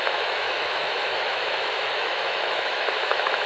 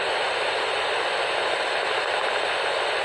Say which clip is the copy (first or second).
first